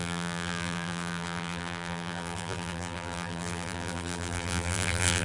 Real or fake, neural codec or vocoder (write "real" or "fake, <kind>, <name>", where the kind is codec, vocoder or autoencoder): fake, vocoder, BigVGAN v2